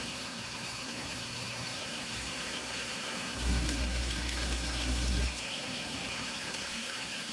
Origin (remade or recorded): remade